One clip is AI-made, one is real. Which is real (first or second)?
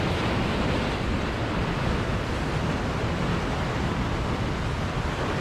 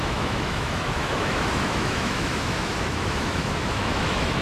first